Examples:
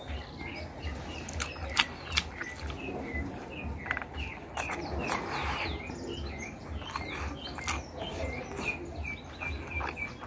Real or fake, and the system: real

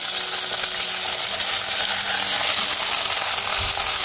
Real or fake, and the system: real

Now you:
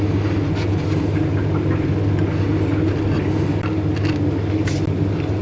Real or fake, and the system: real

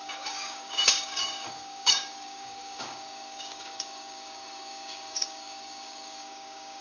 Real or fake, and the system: fake, codec, DAC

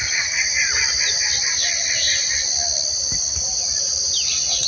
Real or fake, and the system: real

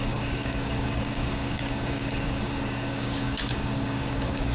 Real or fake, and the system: fake, codec, DAC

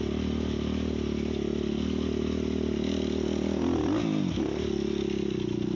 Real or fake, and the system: real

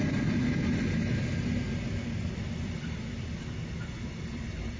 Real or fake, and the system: real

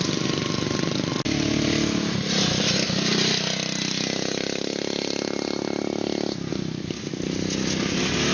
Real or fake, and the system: real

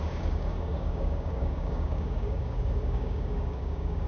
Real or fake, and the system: fake, codec, DAC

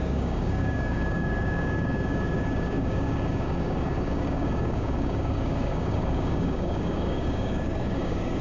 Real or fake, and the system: fake, codec, DAC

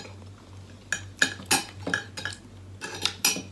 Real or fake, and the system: real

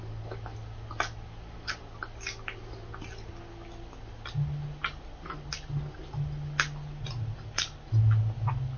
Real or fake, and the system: real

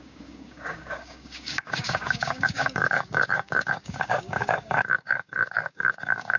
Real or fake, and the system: fake, codec, DAC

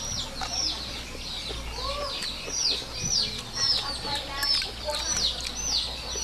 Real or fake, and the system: real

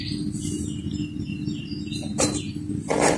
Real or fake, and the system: real